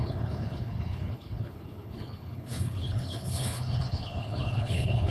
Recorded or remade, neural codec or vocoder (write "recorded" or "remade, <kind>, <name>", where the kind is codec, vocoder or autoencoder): remade, codec, HILCodec